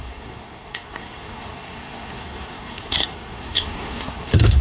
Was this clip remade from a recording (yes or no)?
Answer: yes